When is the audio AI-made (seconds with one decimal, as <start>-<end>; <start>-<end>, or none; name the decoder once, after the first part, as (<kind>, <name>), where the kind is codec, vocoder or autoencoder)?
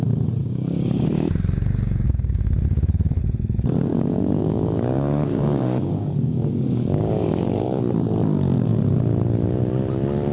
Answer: 0.4-3.2 (codec, DAC); 3.9-7.8